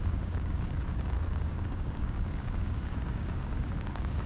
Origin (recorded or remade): remade